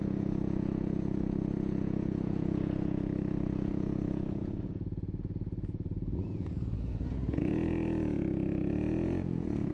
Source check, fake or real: fake